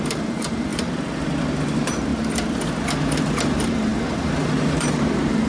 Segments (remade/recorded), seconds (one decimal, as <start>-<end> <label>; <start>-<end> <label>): 0.0-0.7 remade; 0.7-1.4 recorded; 1.4-2.1 remade; 2.1-3.2 recorded; 3.2-5.5 remade

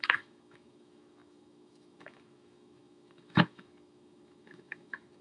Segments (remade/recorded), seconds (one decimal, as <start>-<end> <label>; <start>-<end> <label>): 0.0-5.2 remade

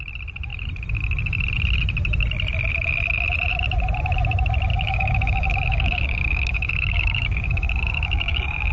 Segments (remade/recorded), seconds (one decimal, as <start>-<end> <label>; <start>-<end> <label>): 0.0-4.7 recorded; 4.7-8.7 remade

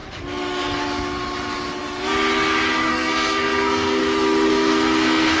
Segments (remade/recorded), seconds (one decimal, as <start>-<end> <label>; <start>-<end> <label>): 0.0-2.9 recorded; 2.9-4.0 remade; 4.0-4.5 recorded; 4.5-5.4 remade

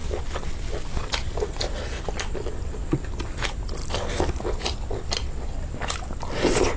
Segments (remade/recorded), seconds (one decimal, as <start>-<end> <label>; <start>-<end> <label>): 0.0-6.8 recorded

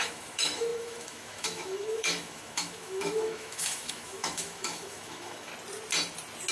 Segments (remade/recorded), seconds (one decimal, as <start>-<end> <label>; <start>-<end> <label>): 0.0-5.5 remade; 5.5-6.5 recorded

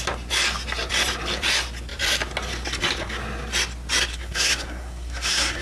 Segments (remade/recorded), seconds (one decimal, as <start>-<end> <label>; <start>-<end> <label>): 0.0-4.1 recorded; 4.1-5.6 remade